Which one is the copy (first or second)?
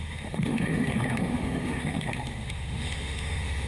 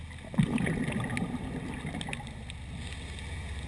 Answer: first